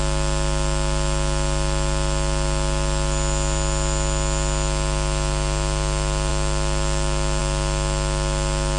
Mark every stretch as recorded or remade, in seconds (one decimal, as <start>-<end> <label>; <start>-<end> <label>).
0.0-8.8 recorded